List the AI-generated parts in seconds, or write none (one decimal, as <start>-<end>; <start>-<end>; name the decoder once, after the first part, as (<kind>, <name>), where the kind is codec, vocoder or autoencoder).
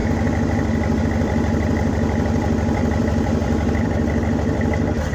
1.0-5.1 (vocoder, BigVGAN v2)